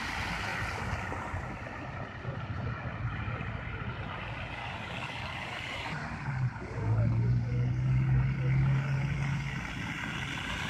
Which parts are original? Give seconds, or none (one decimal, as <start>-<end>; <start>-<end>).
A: 0.0-4.6; 9.5-10.7